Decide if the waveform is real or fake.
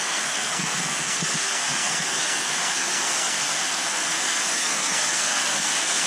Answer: fake